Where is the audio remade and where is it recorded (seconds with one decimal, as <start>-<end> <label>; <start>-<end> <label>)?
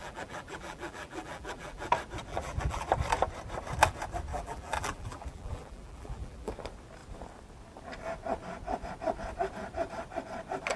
0.0-1.9 remade; 1.9-2.3 recorded; 2.3-2.9 remade; 2.9-4.3 recorded; 4.3-6.5 remade; 6.5-10.8 recorded